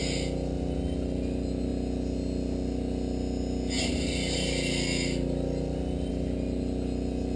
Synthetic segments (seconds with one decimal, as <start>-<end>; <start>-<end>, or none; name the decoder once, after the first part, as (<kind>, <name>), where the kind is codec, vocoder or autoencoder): none